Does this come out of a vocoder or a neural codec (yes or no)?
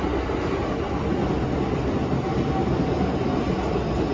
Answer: no